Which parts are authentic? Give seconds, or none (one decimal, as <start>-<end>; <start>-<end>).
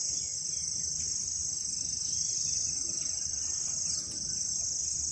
0.0-5.1